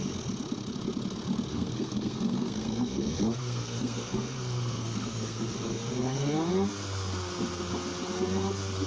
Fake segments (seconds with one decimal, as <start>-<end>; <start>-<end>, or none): 1.5-6.5

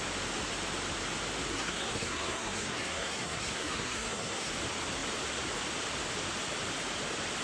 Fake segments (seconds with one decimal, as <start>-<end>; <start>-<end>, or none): 1.5-4.5

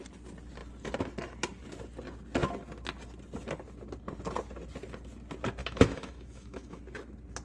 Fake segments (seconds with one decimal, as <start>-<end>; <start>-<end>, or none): 5.6-6.8